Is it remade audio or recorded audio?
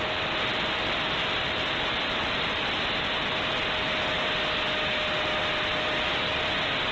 recorded